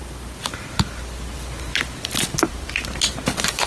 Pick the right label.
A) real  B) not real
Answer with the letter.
A